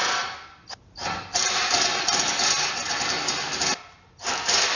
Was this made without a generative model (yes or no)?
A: yes